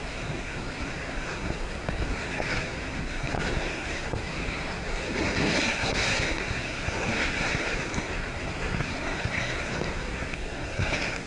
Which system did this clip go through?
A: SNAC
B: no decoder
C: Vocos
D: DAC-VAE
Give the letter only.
A